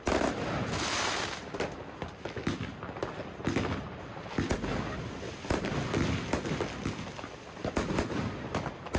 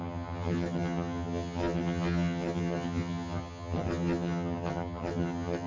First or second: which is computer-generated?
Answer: second